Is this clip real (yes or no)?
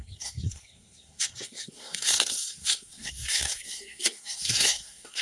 no